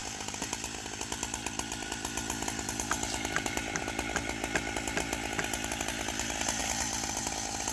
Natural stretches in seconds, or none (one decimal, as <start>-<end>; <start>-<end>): 3.8-6.6; 7.2-7.7